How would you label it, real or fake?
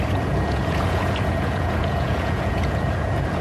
fake